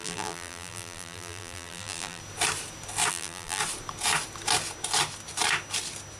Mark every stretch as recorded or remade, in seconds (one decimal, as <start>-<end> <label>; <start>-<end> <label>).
0.0-2.2 remade; 2.2-3.1 recorded; 3.1-3.6 remade; 3.6-6.2 recorded